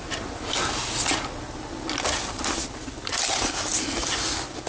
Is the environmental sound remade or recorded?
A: recorded